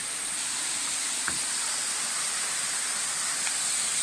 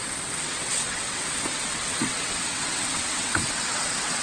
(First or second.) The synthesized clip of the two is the second